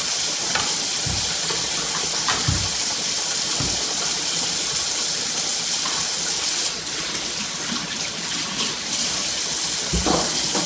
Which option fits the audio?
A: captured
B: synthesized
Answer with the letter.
A